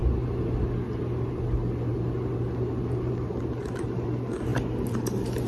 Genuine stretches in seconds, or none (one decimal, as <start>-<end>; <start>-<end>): 0.0-5.5